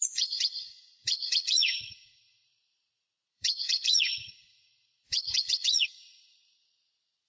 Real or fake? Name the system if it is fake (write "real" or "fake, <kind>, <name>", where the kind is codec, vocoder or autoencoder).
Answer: fake, vocoder, Vocos